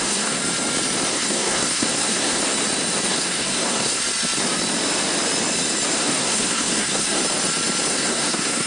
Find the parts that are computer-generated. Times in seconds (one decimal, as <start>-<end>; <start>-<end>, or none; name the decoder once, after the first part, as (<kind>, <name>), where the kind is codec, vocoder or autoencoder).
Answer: 0.0-0.4 (codec, SNAC); 1.1-2.4; 3.1-4.0; 6.0-7.2; 7.9-8.7

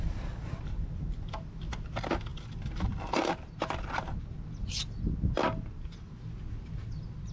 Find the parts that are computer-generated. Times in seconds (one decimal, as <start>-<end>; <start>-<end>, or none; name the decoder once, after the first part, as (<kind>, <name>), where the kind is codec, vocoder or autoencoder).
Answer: none

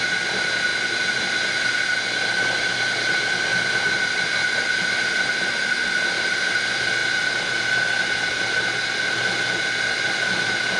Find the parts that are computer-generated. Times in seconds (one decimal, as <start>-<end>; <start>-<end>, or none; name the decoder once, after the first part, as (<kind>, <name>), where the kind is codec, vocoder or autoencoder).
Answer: none

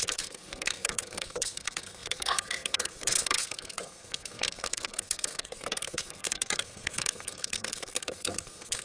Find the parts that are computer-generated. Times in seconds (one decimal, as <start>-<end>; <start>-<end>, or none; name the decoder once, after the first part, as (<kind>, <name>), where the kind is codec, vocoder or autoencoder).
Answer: 0.0-8.8 (codec, SNAC)

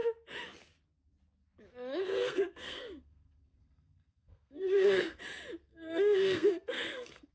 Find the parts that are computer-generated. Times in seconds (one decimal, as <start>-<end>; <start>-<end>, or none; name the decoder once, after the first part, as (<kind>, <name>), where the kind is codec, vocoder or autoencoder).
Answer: 2.0-5.2 (codec, SNAC); 5.7-7.3

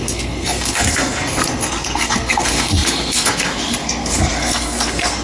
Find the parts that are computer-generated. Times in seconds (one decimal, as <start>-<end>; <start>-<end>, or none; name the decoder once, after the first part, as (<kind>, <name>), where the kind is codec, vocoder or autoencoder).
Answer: 0.0-5.2 (codec, SNAC)

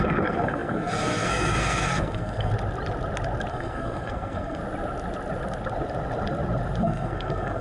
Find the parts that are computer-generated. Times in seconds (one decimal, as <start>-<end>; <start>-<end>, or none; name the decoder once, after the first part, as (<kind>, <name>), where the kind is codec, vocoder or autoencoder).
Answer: 0.0-2.5 (codec, SNAC); 3.5-4.6; 6.8-7.6